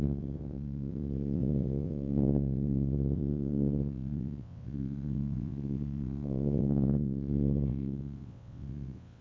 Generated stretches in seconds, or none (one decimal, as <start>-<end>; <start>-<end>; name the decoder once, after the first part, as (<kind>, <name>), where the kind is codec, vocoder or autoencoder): 0.0-9.2 (vocoder, WaveNeXt)